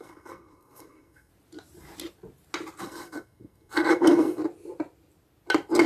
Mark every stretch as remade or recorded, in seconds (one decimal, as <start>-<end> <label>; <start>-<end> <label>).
0.0-1.3 remade; 1.3-2.8 recorded; 2.8-4.4 remade; 4.4-5.9 recorded